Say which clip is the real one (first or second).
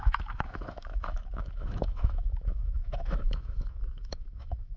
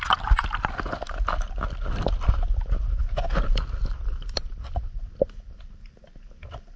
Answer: second